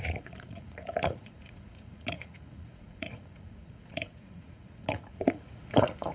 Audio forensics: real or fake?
fake